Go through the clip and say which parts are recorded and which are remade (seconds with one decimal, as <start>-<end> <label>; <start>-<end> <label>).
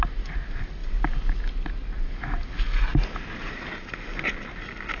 0.0-5.0 recorded